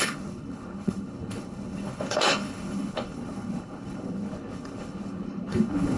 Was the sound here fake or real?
fake